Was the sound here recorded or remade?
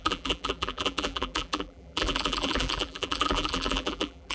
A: remade